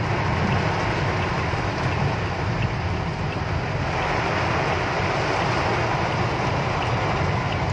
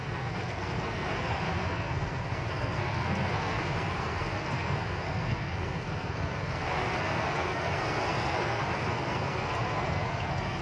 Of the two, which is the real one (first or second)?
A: first